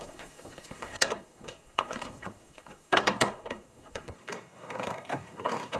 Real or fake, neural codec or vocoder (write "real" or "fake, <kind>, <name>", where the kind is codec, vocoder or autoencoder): fake, codec, SNAC